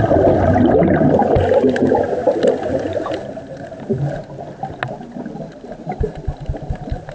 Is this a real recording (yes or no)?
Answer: yes